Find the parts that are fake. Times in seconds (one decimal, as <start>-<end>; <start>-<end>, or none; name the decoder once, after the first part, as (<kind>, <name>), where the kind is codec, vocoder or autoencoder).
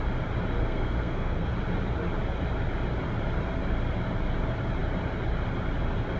0.6-1.5 (codec, SNAC)